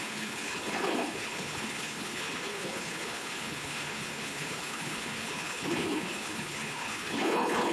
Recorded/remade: remade